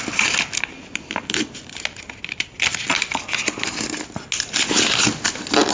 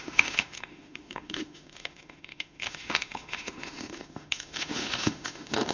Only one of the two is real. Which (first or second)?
first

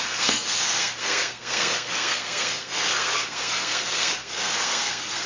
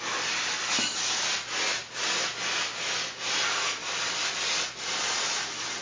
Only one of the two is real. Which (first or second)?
second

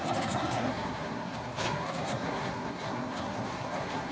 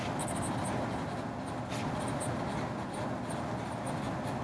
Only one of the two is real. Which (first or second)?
second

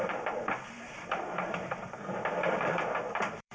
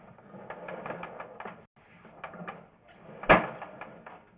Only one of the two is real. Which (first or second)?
second